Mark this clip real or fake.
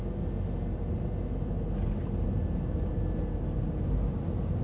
real